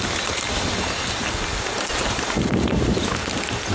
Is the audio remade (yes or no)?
no